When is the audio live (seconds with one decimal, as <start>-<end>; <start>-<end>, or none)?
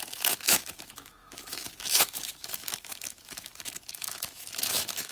none